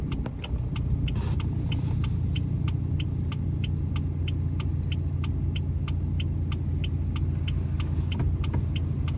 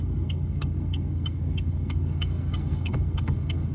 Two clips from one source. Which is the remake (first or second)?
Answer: second